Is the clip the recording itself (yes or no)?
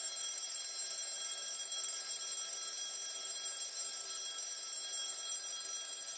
yes